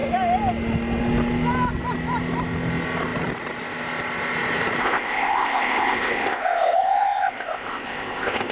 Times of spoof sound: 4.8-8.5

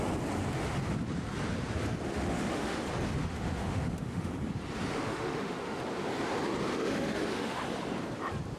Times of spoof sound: 2.1-2.8; 3.2-4.3; 4.9-5.8; 6.7-7.6